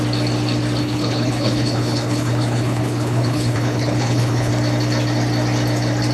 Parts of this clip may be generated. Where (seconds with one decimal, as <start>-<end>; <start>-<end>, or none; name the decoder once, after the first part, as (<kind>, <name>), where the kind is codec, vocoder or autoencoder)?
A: 0.8-4.5 (codec, HILCodec)